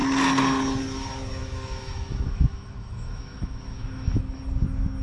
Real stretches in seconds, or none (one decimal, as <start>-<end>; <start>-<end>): 0.0-1.4; 4.4-5.0